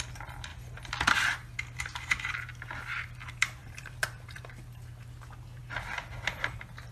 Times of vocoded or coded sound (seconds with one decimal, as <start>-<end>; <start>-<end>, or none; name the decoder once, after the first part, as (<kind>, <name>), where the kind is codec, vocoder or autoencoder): 3.6-4.6 (vocoder, BigVGAN v2)